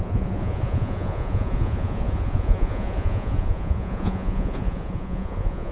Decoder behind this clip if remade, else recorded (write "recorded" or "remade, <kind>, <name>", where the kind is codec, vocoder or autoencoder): remade, vocoder, Vocos